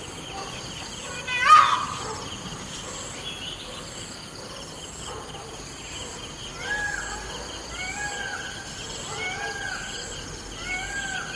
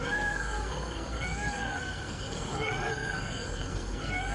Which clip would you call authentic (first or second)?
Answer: first